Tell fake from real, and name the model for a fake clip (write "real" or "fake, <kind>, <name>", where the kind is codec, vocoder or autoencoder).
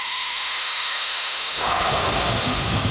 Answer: fake, autoencoder, DAC-VAE